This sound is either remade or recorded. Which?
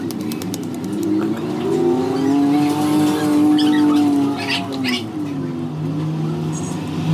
recorded